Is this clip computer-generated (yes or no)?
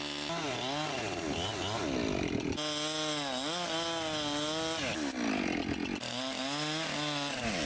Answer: no